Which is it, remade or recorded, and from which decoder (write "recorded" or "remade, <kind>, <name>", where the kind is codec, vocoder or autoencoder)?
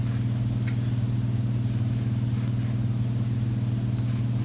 recorded